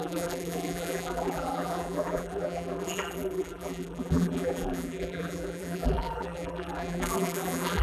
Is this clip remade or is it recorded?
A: remade